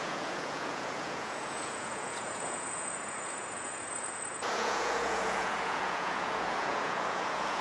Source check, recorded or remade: remade